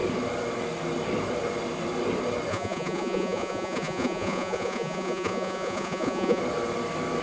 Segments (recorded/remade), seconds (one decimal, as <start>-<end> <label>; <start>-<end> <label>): 0.0-2.5 recorded; 2.5-6.4 remade; 6.4-7.2 recorded